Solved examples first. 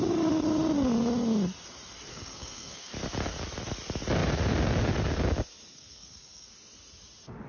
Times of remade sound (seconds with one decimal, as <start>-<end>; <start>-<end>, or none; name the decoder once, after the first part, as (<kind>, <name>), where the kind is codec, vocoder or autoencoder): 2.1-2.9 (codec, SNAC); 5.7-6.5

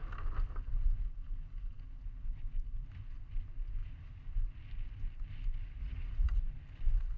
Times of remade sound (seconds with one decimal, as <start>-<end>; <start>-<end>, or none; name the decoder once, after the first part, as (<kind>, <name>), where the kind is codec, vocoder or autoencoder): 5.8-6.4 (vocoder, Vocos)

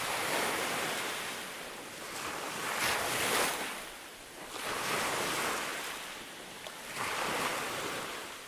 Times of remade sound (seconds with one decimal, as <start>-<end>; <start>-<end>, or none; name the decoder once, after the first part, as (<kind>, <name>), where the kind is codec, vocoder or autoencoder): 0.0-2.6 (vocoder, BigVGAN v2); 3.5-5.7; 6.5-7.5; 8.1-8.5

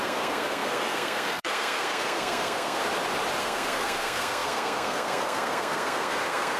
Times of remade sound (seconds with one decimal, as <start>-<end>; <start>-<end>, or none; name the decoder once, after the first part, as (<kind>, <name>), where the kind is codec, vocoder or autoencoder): 0.0-2.8 (codec, SNAC); 3.4-6.6

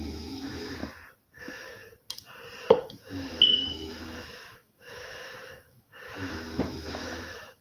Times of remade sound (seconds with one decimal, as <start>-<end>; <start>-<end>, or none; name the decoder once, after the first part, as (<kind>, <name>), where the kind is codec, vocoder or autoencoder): 0.0-0.8 (autoencoder, DAC-VAE); 1.4-1.8; 2.6-7.6